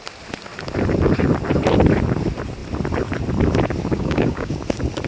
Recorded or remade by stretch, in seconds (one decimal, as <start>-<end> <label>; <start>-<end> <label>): 0.0-3.9 recorded; 3.9-4.5 remade; 4.5-5.1 recorded